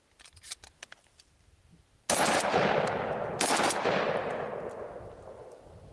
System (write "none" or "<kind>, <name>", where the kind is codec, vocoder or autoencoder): none